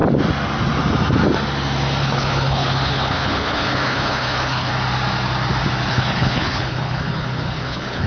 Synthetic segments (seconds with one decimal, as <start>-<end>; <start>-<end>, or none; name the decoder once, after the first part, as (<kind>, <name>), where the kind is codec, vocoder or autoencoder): 2.0-4.7 (codec, HILCodec); 5.9-8.1